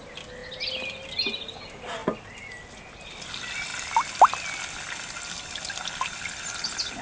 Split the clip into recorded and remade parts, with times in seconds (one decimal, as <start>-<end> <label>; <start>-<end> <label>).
0.0-7.0 recorded